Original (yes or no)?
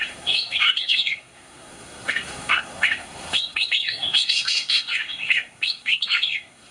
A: no